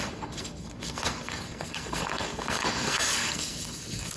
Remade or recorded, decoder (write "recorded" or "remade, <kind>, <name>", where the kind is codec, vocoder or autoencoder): remade, codec, SNAC